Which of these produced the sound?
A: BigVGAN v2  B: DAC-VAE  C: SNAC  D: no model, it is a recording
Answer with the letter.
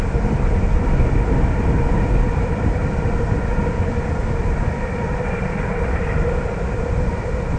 A